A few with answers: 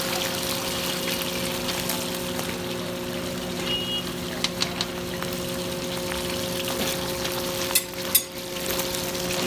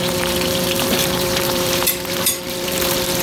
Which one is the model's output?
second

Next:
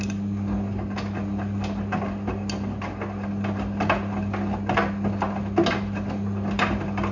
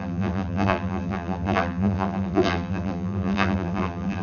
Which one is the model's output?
second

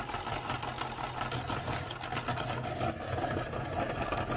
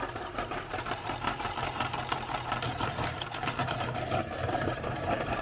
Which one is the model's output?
second